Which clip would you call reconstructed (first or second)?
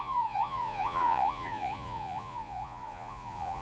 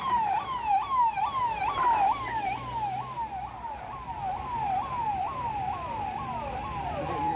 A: first